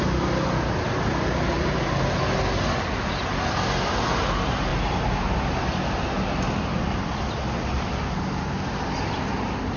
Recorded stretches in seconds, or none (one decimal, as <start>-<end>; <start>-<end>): 0.0-9.8